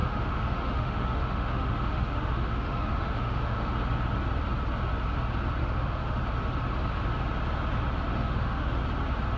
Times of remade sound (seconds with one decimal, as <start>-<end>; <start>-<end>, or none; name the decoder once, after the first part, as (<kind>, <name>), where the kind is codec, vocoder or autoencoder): 0.0-3.8 (autoencoder, DAC-VAE); 5.6-6.2; 8.1-8.8